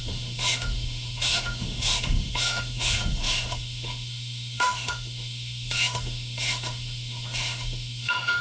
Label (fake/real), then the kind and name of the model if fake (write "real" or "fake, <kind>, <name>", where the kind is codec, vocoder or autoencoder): fake, autoencoder, DAC-VAE